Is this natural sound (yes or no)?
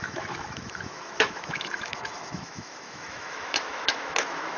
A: no